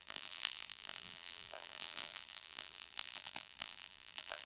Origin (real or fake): fake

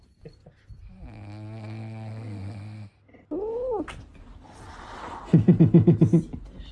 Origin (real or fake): real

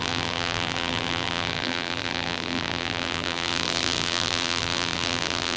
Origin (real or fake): fake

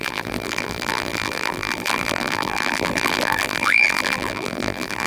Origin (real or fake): fake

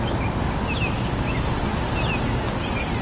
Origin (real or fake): real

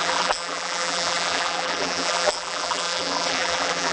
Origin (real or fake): fake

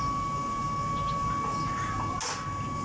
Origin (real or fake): real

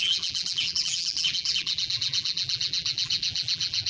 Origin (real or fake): fake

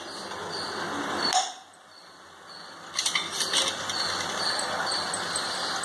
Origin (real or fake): real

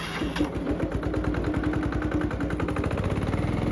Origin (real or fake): real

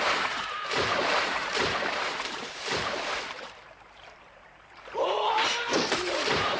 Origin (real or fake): fake